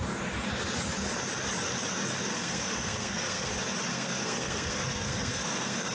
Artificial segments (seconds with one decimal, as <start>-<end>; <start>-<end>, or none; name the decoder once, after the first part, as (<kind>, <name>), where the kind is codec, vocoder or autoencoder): 2.3-3.5 (codec, SNAC); 3.9-5.9